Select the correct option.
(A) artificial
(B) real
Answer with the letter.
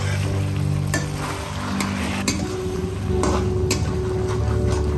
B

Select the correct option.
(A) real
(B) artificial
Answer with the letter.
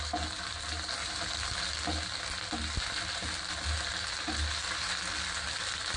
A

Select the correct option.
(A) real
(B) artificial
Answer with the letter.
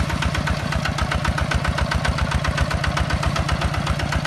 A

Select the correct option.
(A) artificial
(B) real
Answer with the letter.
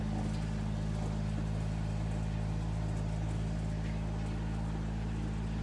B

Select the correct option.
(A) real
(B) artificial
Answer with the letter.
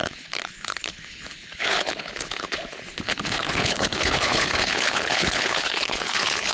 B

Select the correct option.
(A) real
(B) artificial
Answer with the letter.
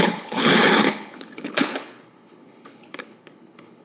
B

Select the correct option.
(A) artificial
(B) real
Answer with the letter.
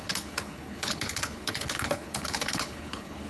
A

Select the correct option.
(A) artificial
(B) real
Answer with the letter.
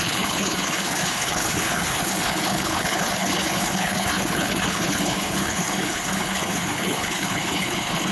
A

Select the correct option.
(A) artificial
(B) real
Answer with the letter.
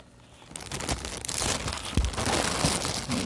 B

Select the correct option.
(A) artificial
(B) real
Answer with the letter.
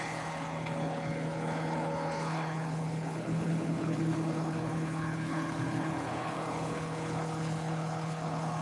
A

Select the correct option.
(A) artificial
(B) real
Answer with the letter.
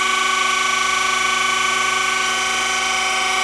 B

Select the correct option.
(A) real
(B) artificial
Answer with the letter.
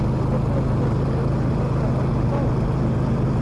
A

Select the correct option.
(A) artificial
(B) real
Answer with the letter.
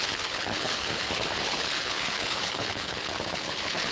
A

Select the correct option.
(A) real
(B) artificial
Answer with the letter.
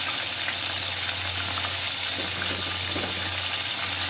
A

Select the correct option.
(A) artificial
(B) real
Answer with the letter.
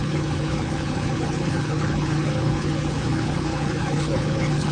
A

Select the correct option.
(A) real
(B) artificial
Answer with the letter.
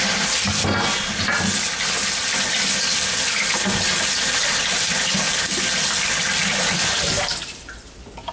A